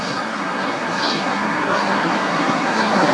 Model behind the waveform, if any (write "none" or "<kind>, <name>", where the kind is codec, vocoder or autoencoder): codec, SNAC